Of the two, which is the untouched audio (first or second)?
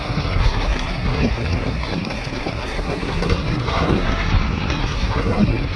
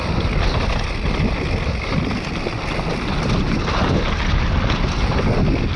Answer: second